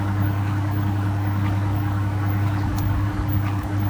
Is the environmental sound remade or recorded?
remade